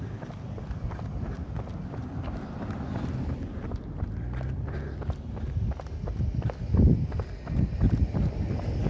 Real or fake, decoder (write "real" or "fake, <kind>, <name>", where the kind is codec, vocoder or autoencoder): real